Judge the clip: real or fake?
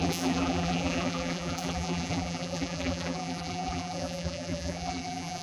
fake